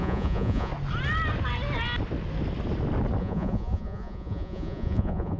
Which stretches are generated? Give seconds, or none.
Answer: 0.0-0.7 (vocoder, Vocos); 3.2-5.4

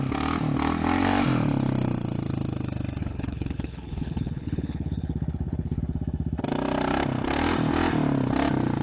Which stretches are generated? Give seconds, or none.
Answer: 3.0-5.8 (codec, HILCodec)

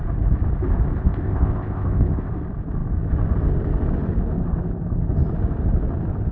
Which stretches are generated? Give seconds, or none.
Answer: 1.0-2.3 (codec, ZipCodec)